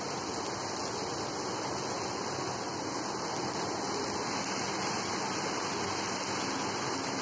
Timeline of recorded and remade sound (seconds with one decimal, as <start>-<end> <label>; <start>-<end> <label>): 0.0-7.2 recorded